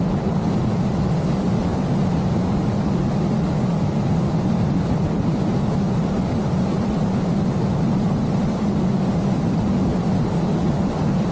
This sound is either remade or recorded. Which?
recorded